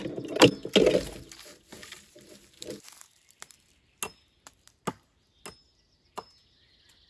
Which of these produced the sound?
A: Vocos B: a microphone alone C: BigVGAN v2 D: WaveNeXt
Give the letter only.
B